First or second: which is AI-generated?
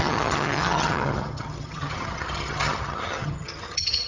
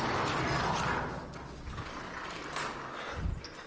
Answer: first